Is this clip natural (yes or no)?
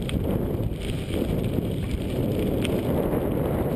yes